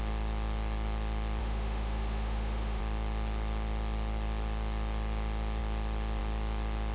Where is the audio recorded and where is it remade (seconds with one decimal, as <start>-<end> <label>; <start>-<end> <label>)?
0.0-1.4 recorded; 1.4-2.8 remade; 2.8-6.9 recorded